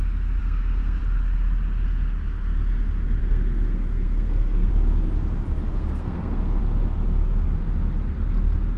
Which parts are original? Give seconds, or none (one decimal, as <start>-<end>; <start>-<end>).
0.0-0.4; 1.0-3.2; 4.7-5.7; 6.6-8.8